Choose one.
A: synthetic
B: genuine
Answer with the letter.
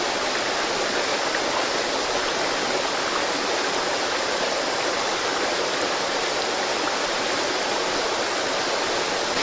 B